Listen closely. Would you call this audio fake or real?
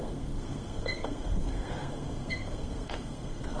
fake